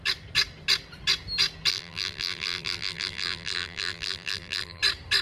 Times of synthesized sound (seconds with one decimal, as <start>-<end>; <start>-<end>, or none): 1.7-4.8